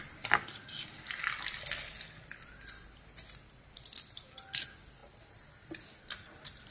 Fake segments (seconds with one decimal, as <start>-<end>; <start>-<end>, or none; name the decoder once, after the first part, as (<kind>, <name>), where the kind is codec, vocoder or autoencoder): 5.0-5.8 (vocoder, BigVGAN v2)